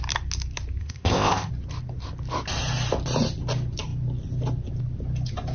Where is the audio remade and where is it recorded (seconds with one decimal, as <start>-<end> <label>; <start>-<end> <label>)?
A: 0.0-0.8 recorded; 0.8-1.5 remade; 1.5-5.5 recorded